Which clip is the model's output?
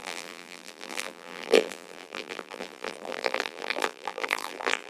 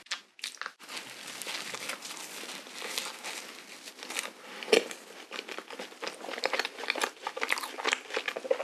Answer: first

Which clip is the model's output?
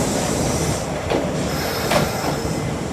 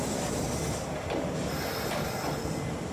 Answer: first